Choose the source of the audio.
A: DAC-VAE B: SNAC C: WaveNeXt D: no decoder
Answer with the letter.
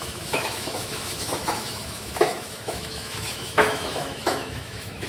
A